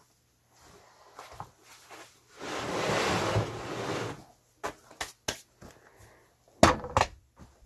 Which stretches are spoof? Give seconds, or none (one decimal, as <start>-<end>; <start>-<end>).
none